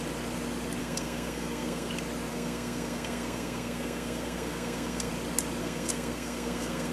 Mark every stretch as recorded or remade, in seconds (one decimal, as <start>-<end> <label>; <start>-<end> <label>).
0.0-0.8 recorded; 0.8-1.9 remade; 1.9-2.3 recorded; 2.3-5.1 remade; 5.1-5.6 recorded; 5.6-6.9 remade